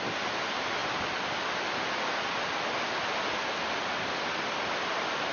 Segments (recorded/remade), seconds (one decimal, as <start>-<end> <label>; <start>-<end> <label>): 0.0-0.8 remade; 0.8-4.0 recorded; 4.0-5.3 remade